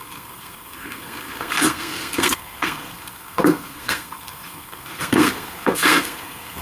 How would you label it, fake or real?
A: fake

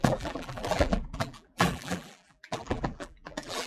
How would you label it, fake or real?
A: fake